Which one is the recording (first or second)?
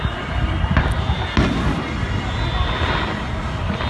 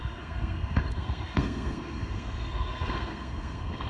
first